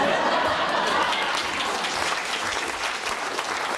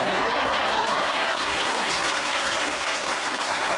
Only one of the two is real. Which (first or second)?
first